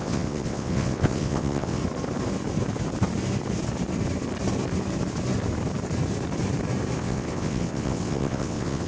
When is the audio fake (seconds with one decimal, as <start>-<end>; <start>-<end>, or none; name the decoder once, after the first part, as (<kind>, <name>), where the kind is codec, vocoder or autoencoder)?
0.0-1.8 (vocoder, WaveNeXt); 7.0-8.9